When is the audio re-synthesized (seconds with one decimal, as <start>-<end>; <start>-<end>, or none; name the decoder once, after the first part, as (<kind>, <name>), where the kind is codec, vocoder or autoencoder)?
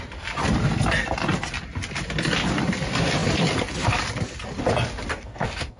5.1-5.8 (codec, DAC)